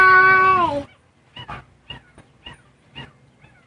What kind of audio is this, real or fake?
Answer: real